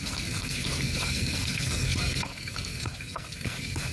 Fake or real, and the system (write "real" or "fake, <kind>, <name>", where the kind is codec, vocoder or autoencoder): fake, codec, SNAC